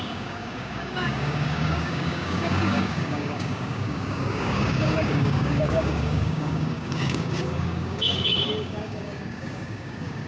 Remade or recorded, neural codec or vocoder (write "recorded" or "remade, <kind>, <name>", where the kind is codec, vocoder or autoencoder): remade, codec, DAC